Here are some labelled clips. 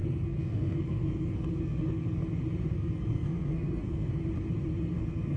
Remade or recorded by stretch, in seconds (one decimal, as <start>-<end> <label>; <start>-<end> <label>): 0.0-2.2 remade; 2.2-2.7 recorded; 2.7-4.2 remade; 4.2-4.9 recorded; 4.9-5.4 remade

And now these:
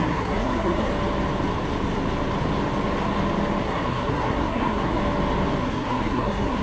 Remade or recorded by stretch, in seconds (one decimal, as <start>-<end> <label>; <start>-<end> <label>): 0.0-0.9 remade; 0.9-3.6 recorded; 3.6-5.0 remade; 5.0-5.6 recorded; 5.6-6.6 remade

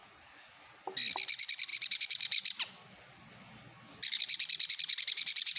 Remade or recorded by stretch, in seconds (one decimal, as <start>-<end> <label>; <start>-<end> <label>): 0.0-5.6 recorded

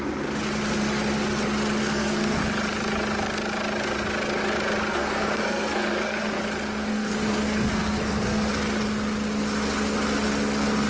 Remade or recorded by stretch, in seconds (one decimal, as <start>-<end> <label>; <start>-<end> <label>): 0.0-1.8 recorded; 1.8-2.4 remade; 2.4-4.9 recorded; 4.9-6.4 remade; 6.4-6.9 recorded; 6.9-8.5 remade; 8.5-10.9 recorded

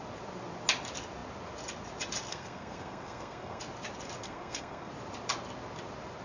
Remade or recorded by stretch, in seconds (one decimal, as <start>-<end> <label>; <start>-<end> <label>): 0.0-2.3 recorded; 2.3-3.6 remade; 3.6-4.2 recorded; 4.2-4.9 remade; 4.9-6.2 recorded